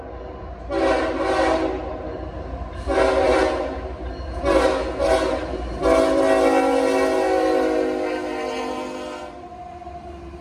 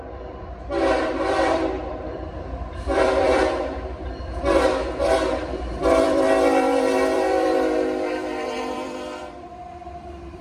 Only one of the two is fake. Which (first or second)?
second